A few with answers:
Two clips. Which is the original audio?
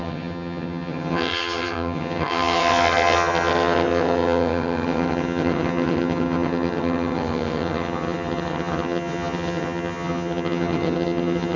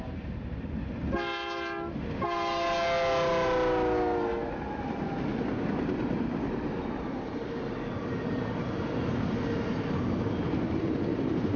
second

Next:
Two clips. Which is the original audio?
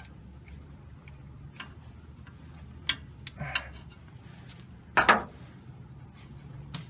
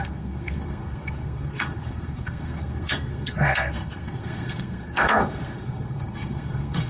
first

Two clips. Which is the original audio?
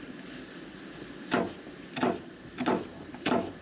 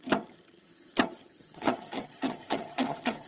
first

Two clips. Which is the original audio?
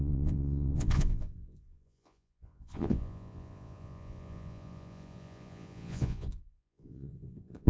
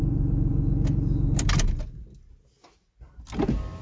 second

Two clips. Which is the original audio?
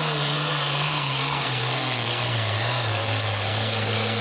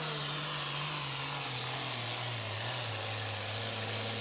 second